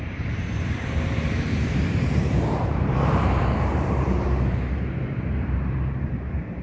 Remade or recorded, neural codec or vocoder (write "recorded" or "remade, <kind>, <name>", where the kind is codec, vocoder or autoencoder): remade, vocoder, BigVGAN v2